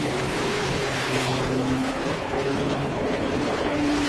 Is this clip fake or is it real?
fake